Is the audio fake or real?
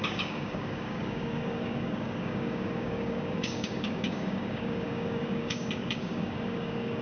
fake